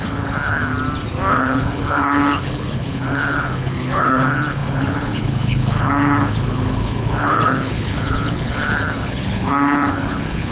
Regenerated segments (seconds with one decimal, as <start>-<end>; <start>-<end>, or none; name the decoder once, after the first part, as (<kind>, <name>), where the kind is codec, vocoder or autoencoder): 0.0-0.7 (codec, HILCodec); 1.4-10.5